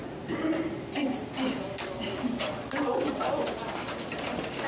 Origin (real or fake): real